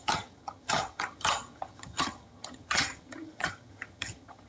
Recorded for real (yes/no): no